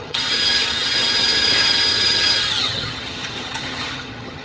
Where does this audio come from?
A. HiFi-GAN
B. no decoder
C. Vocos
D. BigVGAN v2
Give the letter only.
A